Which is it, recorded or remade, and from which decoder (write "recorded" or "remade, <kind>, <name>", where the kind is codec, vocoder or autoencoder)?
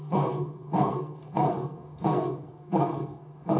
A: remade, codec, SNAC